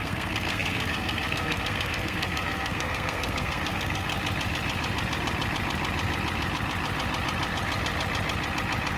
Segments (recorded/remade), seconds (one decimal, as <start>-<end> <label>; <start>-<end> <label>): 0.0-4.1 remade; 4.1-9.0 recorded